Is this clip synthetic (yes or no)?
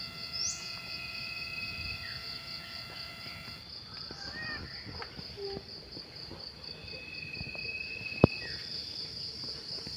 no